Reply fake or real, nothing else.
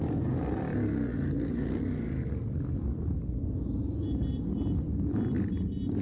real